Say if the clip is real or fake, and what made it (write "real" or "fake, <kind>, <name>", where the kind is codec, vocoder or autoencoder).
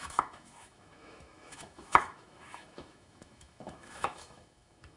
fake, autoencoder, DAC-VAE